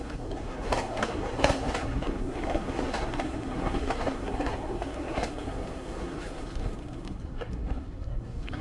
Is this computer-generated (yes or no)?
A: yes